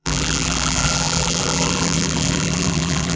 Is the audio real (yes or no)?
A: no